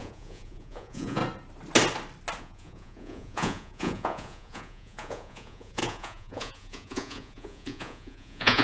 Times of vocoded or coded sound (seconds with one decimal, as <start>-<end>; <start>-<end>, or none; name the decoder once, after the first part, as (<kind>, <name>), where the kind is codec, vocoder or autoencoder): 0.0-1.2 (vocoder, Vocos); 2.4-8.6